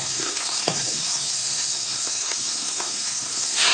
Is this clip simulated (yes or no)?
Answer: yes